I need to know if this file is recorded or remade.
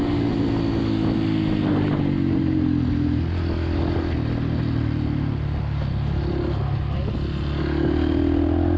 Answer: recorded